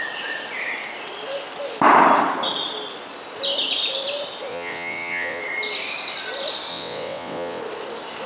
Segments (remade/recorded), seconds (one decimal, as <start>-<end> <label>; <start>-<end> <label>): 0.0-4.5 recorded; 4.5-5.4 remade; 5.4-6.7 recorded; 6.7-7.6 remade; 7.6-8.3 recorded